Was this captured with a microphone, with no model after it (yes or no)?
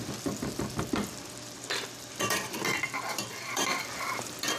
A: no